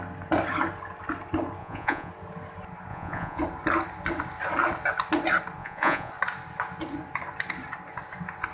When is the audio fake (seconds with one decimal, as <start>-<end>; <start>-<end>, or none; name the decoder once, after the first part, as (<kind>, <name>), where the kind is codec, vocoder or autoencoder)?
1.6-2.1 (vocoder, Vocos); 2.9-3.4; 5.6-6.1